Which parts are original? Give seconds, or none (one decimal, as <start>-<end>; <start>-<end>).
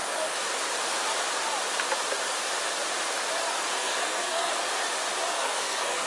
0.0-3.8; 4.5-5.3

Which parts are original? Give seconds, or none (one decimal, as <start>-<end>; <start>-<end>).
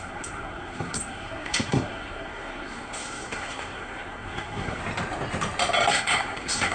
4.8-5.9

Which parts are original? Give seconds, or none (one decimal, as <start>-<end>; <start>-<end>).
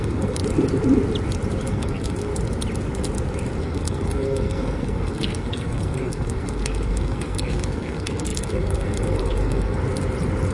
0.4-1.7; 2.3-3.6; 9.8-10.5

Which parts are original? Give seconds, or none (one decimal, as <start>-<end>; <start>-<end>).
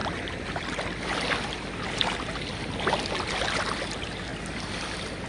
0.0-5.3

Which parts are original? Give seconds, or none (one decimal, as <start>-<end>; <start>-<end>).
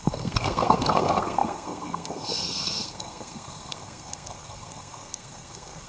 none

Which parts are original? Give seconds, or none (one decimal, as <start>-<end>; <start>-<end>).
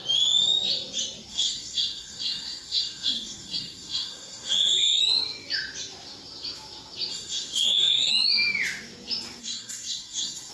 0.0-1.3; 5.0-7.1; 8.1-9.4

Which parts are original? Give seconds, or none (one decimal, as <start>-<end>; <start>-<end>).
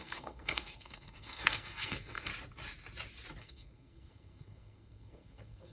2.3-3.4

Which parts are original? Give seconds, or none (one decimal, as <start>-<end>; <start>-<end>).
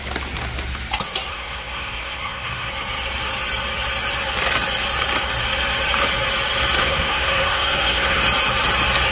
0.0-1.3; 2.7-6.8; 8.2-9.1